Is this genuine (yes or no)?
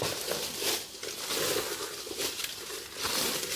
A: yes